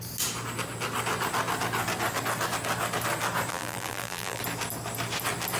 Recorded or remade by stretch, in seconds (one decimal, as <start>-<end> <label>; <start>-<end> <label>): 0.0-3.5 recorded; 3.5-4.4 remade; 4.4-5.6 recorded